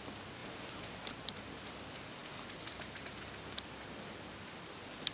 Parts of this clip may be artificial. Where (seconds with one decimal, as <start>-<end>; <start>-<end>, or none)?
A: none